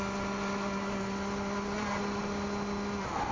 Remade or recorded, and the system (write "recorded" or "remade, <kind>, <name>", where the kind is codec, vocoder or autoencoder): recorded